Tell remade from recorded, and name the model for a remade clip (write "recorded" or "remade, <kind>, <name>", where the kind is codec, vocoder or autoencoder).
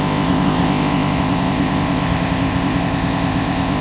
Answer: remade, codec, ZipCodec